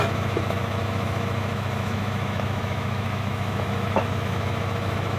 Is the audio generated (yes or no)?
yes